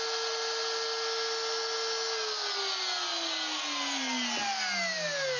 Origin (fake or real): real